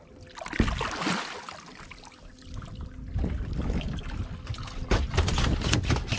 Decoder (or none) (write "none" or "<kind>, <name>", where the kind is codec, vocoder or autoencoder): none